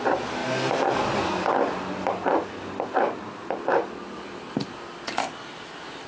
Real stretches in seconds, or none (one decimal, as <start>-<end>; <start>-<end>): 0.0-6.1